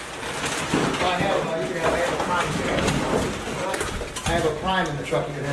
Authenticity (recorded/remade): recorded